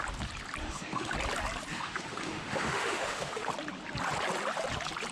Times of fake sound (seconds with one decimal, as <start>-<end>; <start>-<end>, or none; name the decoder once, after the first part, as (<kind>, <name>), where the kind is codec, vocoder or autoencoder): 0.6-1.1 (autoencoder, DAC-VAE); 1.7-3.5